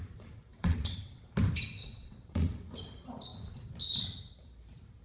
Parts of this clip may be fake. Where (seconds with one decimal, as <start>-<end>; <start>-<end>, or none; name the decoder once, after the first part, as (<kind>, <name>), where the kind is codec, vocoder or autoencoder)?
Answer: 0.5-1.3 (vocoder, WaveNeXt); 1.8-2.6